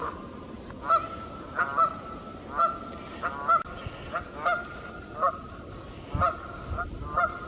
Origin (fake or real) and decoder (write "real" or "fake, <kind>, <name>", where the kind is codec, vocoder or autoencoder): real